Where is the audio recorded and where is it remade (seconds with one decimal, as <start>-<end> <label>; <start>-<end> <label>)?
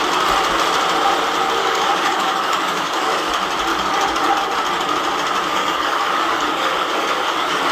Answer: 0.0-1.6 recorded; 1.6-3.3 remade; 3.3-3.7 recorded; 3.7-4.3 remade; 4.3-5.5 recorded; 5.5-7.7 remade